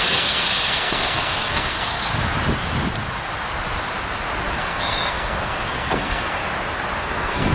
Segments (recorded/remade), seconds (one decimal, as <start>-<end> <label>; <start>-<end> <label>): 0.0-2.1 remade; 2.1-4.5 recorded; 4.5-6.4 remade; 6.4-7.0 recorded; 7.0-7.5 remade